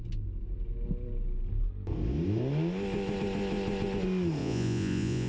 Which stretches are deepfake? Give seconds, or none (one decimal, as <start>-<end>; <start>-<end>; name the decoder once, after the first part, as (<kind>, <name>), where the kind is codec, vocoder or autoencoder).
4.4-5.3 (vocoder, Vocos)